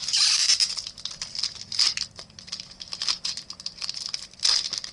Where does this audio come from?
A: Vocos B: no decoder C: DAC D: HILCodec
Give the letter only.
B